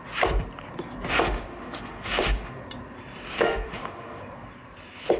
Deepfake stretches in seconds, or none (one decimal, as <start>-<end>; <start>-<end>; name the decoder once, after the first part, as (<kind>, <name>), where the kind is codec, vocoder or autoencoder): 1.1-2.6 (autoencoder, DAC-VAE); 3.3-4.2